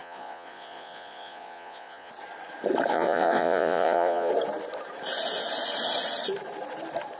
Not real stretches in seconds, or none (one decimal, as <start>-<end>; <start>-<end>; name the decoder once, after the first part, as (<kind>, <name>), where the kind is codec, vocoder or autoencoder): 0.0-2.1 (vocoder, Vocos); 2.9-4.3